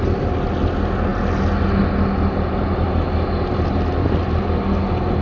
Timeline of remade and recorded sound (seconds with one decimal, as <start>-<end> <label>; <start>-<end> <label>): 0.0-5.2 recorded